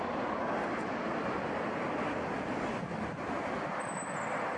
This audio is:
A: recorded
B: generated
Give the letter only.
A